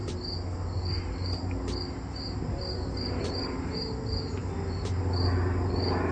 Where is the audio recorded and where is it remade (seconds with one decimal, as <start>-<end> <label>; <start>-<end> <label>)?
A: 0.0-6.1 recorded